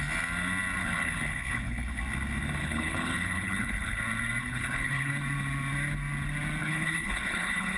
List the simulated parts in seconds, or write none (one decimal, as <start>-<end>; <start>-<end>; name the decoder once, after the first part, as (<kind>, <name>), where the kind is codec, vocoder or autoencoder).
0.8-2.0 (codec, HILCodec); 2.6-4.0; 4.4-5.1; 6.6-7.8